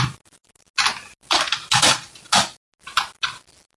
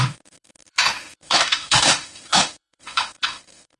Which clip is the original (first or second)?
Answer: first